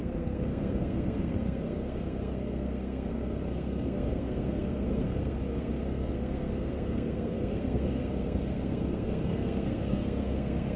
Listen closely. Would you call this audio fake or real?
fake